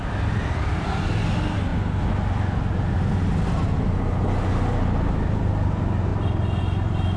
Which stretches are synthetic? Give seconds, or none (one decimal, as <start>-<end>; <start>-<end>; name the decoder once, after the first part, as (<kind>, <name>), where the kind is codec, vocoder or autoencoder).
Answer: 6.1-6.6 (vocoder, BigVGAN v2)